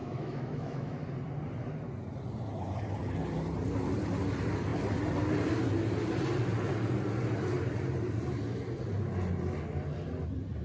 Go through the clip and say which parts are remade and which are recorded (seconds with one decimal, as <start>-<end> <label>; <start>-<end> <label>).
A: 0.0-1.0 remade; 1.0-10.6 recorded